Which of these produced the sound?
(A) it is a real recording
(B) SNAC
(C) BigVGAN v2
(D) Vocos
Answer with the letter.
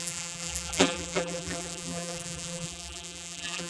C